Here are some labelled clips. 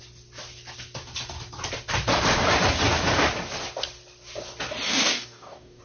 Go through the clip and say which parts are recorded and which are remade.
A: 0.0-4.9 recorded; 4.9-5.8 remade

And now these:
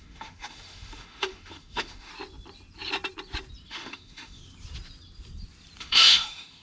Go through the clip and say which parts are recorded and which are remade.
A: 0.0-2.1 remade; 2.1-3.7 recorded; 3.7-4.4 remade; 4.4-5.8 recorded; 5.8-6.6 remade

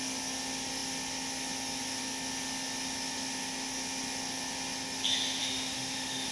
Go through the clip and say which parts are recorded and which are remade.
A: 0.0-5.4 recorded; 5.4-6.3 remade

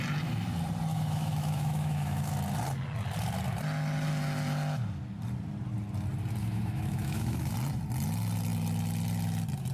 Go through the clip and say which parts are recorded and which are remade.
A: 0.0-0.9 recorded; 0.9-2.3 remade; 2.3-6.4 recorded; 6.4-7.5 remade; 7.5-9.7 recorded

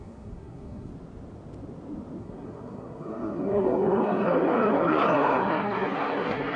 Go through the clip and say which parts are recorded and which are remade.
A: 0.0-0.9 remade; 0.9-2.2 recorded; 2.2-6.6 remade

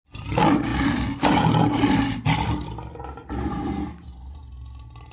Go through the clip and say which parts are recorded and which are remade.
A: 0.0-5.1 recorded

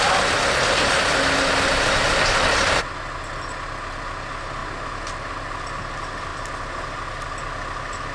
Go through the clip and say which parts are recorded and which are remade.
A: 0.0-8.1 recorded